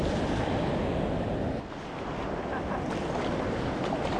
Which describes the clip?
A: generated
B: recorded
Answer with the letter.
B